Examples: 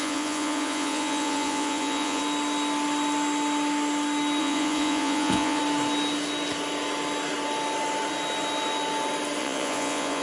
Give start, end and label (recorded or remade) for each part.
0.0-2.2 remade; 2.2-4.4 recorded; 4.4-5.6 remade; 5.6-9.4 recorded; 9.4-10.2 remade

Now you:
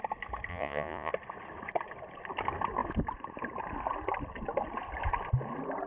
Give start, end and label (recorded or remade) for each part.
0.0-0.5 recorded; 0.5-1.1 remade; 1.1-5.9 recorded

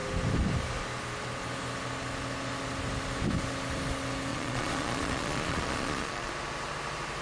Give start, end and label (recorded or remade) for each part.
0.0-4.3 recorded; 4.3-6.3 remade; 6.3-7.2 recorded

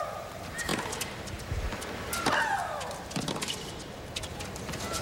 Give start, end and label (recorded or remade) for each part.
0.0-5.0 recorded

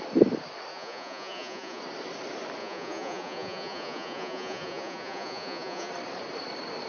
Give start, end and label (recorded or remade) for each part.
0.0-0.7 recorded; 0.7-1.8 remade; 1.8-2.6 recorded; 2.6-5.9 remade; 5.9-6.9 recorded

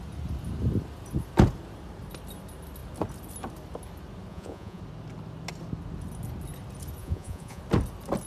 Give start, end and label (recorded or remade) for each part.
0.0-4.3 recorded; 4.3-4.8 remade; 4.8-7.0 recorded; 7.0-7.6 remade; 7.6-8.3 recorded

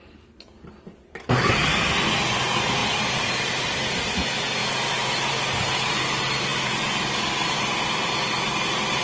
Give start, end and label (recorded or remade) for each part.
0.0-9.0 recorded